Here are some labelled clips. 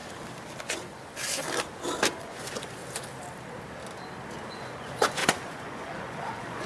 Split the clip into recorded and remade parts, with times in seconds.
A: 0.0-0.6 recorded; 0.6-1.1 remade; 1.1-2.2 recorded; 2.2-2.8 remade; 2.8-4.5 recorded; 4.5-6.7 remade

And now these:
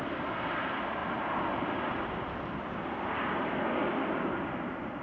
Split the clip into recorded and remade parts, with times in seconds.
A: 0.0-5.0 recorded

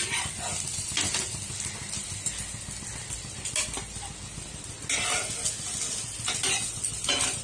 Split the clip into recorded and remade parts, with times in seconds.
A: 0.0-7.4 recorded

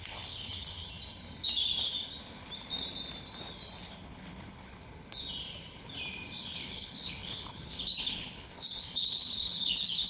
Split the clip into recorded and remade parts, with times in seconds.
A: 0.0-0.8 remade; 0.8-3.8 recorded; 3.8-4.7 remade; 4.7-6.4 recorded; 6.4-10.1 remade

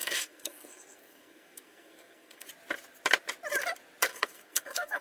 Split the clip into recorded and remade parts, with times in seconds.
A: 0.0-2.5 remade; 2.5-4.1 recorded; 4.1-5.0 remade

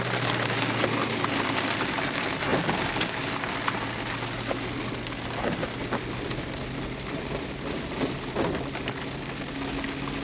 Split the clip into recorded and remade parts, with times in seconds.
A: 0.0-10.2 recorded

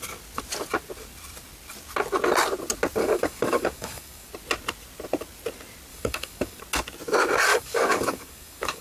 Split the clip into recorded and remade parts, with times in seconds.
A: 0.0-3.0 recorded; 3.0-4.3 remade; 4.3-5.9 recorded; 5.9-6.6 remade; 6.6-7.5 recorded; 7.5-8.8 remade